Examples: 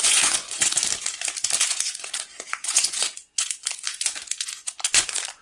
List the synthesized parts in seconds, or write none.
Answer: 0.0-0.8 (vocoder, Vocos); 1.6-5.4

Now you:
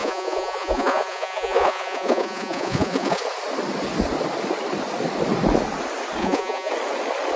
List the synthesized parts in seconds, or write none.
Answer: 0.0-3.2 (vocoder, Vocos); 6.2-6.7

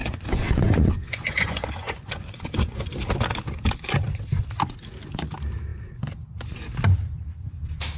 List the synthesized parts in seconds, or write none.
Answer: 0.0-2.9 (vocoder, Vocos)

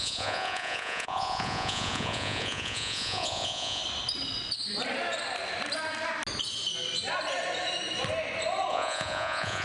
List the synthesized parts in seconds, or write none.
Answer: 0.0-3.8 (vocoder, Vocos); 8.7-9.6